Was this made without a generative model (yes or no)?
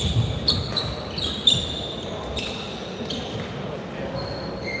yes